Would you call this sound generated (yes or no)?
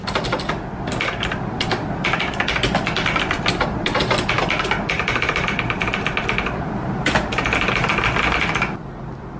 no